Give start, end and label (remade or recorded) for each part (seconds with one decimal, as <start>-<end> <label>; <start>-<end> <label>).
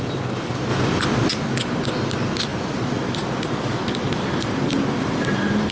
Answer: 0.0-5.7 recorded